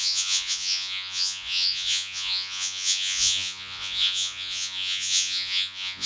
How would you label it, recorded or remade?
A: remade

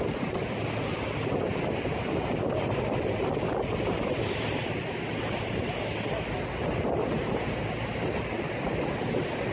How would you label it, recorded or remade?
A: recorded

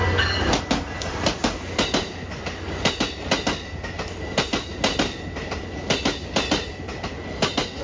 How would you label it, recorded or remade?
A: recorded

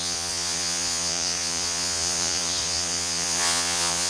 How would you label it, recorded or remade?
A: remade